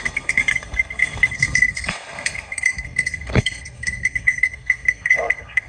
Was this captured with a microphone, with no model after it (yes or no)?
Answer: no